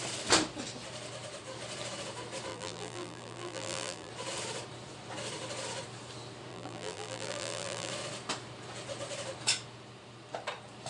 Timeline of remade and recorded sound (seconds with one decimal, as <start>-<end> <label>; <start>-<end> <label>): 0.0-2.5 recorded; 2.5-4.1 remade; 4.1-6.5 recorded; 6.5-7.9 remade; 7.9-10.9 recorded